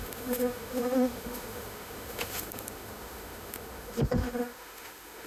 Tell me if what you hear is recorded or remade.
remade